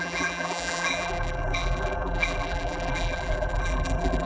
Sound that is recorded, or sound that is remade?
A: remade